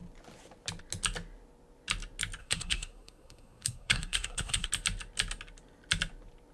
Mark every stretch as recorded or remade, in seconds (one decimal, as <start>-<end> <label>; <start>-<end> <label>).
0.0-2.4 recorded; 2.4-4.7 remade; 4.7-6.5 recorded